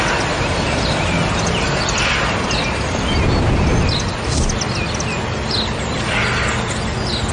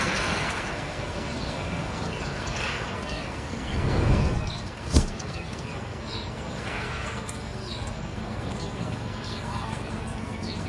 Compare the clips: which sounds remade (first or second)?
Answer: second